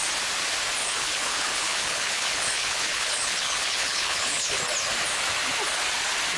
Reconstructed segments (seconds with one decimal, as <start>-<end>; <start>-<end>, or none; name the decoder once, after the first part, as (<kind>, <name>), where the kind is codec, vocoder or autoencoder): 0.8-4.6 (codec, HILCodec)